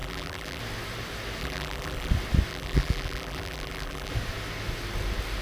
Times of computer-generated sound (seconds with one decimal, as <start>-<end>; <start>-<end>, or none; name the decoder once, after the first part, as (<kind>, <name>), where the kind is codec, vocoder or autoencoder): 0.0-0.6 (vocoder, BigVGAN v2); 1.4-2.1; 2.5-4.1